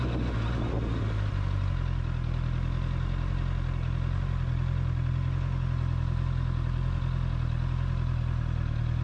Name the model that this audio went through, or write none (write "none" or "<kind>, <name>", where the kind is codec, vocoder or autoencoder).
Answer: none